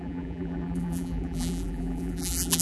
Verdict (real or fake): fake